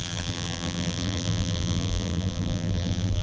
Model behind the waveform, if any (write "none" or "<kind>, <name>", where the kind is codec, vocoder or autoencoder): vocoder, BigVGAN v2